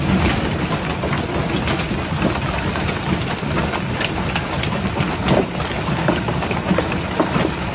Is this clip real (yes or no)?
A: yes